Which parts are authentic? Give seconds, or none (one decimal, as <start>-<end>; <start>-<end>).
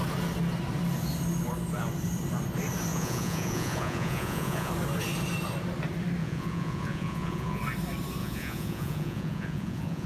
0.0-2.9; 4.7-6.2; 7.6-8.2